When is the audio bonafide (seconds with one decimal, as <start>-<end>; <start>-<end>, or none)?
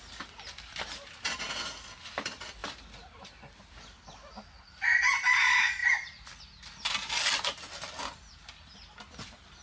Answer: 0.0-2.6; 3.6-9.6